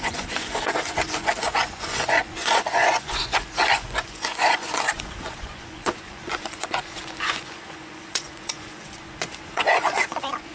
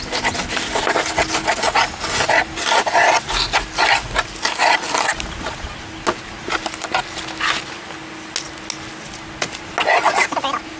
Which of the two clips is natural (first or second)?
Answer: second